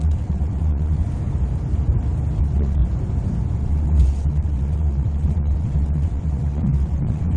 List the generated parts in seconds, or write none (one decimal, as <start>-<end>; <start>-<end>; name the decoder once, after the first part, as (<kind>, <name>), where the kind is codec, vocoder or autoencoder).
0.0-1.0 (vocoder, WaveNeXt); 2.4-2.8; 3.6-7.4